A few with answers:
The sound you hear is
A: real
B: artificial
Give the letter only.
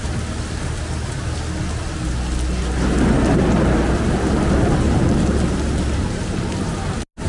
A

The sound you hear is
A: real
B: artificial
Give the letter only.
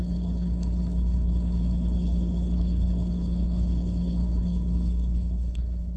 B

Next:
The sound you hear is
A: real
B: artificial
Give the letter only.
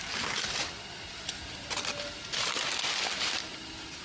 A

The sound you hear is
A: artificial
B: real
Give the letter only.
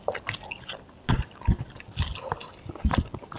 B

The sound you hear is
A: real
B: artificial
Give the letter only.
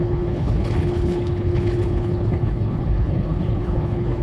B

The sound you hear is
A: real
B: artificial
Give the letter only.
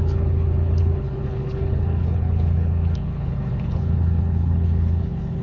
B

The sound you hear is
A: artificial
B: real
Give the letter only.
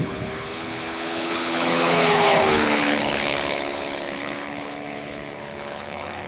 A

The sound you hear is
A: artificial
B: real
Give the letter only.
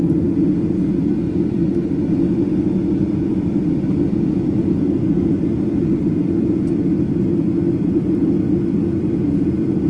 B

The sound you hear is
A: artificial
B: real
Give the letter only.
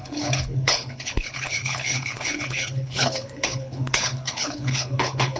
A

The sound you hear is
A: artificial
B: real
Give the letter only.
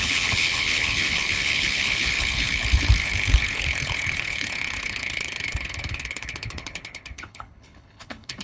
A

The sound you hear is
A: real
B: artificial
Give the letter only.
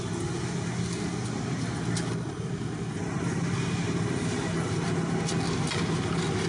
A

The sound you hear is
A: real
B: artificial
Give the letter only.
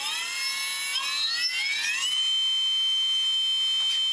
A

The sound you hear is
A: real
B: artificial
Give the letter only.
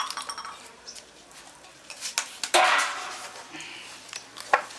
A